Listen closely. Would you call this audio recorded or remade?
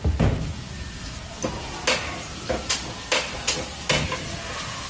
recorded